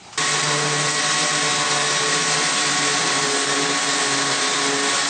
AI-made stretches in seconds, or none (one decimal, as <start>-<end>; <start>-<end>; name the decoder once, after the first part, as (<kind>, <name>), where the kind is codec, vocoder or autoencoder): none